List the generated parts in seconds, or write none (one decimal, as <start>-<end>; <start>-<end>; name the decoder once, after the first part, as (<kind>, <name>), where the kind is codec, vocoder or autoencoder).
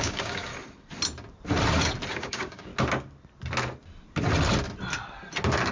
0.0-0.5 (codec, DAC); 2.1-2.7